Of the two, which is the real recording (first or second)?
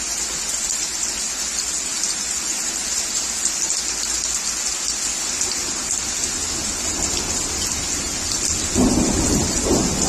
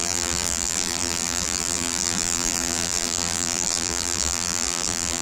first